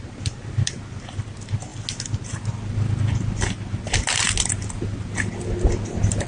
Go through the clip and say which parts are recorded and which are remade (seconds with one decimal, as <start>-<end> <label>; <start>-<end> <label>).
0.0-6.3 recorded